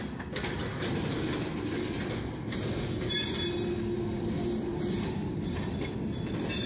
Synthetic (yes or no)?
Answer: no